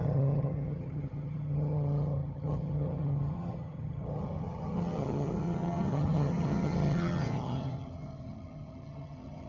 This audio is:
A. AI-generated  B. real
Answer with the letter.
A